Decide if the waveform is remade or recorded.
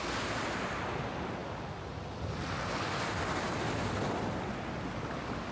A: recorded